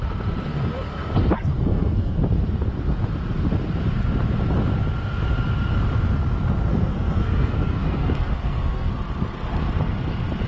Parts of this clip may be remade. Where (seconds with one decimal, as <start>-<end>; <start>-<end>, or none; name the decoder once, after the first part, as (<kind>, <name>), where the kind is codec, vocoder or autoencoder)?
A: 1.5-2.1 (codec, SNAC); 6.7-8.9